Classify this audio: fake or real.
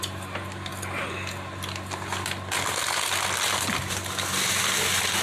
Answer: real